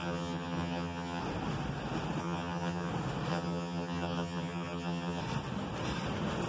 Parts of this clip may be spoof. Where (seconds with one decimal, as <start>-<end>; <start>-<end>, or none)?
0.0-1.2; 2.2-2.9; 3.3-5.2